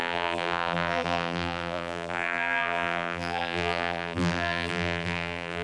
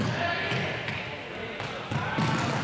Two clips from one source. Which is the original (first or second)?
second